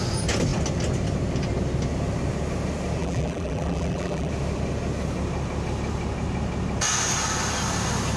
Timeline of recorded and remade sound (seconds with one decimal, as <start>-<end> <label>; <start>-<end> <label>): 0.0-3.0 recorded; 3.0-4.3 remade; 4.3-8.2 recorded